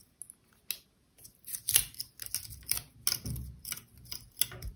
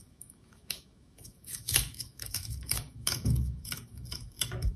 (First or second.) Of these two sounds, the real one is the first